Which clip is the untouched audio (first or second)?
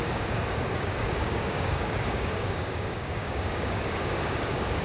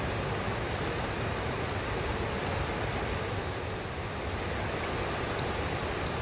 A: second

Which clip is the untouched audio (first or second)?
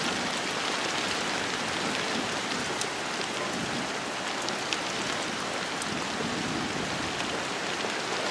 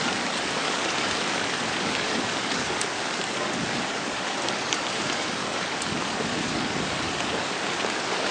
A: first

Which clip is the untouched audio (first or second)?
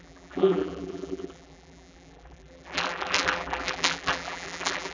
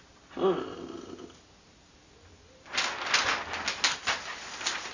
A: second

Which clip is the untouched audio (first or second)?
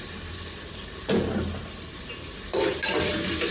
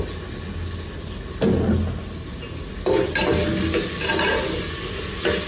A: second